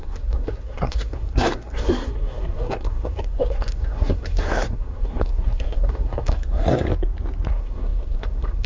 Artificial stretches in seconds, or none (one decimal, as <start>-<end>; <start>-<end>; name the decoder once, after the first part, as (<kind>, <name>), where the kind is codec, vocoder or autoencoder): 0.0-6.9 (codec, SNAC); 7.5-8.7